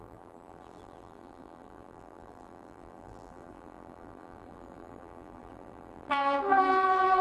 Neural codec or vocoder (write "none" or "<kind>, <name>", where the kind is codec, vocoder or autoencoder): vocoder, BigVGAN v2